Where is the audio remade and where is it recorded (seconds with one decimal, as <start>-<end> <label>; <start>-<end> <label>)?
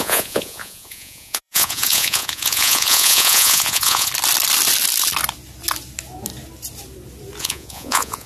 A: 0.0-4.1 remade; 4.1-7.4 recorded; 7.4-8.3 remade